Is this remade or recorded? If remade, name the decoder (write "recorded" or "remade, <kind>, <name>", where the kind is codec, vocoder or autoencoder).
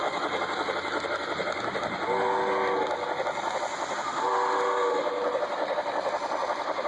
recorded